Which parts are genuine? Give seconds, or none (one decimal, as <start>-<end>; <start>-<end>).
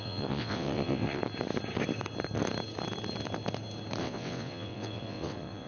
1.2-4.0